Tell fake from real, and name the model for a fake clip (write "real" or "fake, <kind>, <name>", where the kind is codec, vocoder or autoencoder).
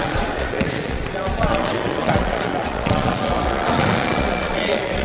fake, vocoder, Vocos